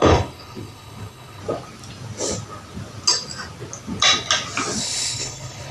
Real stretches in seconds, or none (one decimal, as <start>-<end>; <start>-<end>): 1.4-4.8